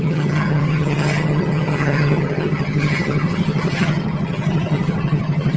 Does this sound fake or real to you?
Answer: fake